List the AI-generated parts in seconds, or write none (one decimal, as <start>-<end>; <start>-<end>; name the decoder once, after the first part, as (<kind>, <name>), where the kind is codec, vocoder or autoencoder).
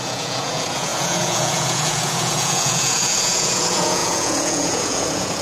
0.0-5.4 (vocoder, Vocos)